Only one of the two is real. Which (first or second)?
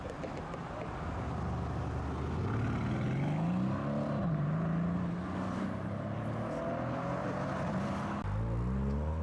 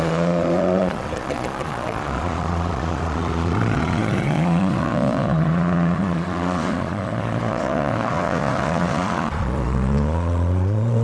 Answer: first